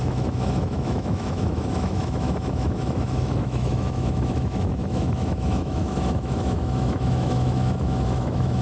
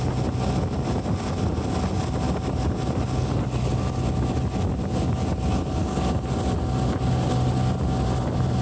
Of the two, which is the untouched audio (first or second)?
second